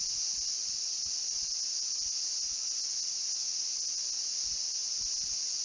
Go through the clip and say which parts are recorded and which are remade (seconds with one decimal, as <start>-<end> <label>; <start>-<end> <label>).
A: 0.0-5.6 recorded